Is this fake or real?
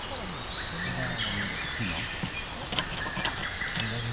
real